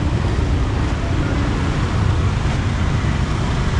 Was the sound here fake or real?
real